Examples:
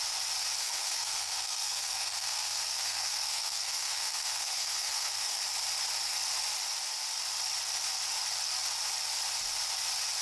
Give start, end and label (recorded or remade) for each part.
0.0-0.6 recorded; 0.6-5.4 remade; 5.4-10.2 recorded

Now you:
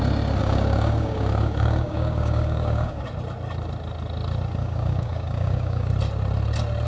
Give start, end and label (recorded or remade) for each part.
0.0-0.4 recorded; 0.4-3.0 remade; 3.0-4.6 recorded; 4.6-5.9 remade; 5.9-6.9 recorded

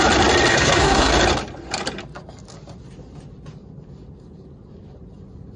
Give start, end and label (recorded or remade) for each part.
0.0-0.5 recorded; 0.5-1.1 remade; 1.1-5.6 recorded

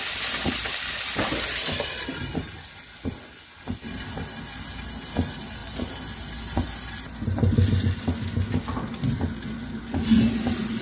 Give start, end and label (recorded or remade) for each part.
0.0-10.8 recorded